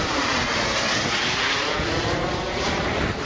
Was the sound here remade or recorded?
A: recorded